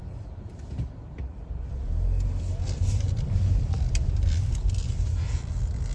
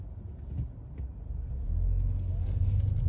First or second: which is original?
second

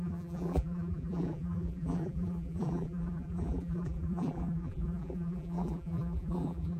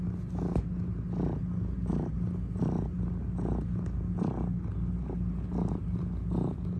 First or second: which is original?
second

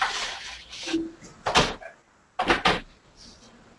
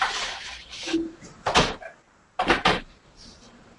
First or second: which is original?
first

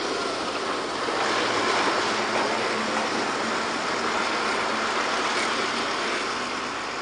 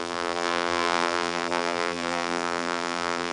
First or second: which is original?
first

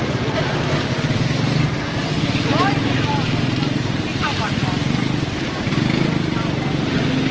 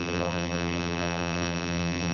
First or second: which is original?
first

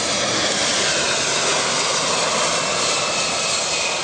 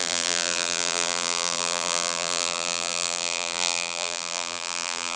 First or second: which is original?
first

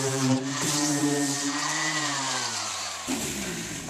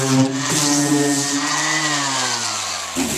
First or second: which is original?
second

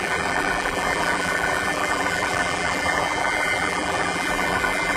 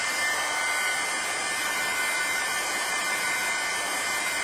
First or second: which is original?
second